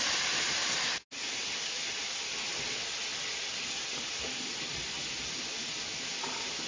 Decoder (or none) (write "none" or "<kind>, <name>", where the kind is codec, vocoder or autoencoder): none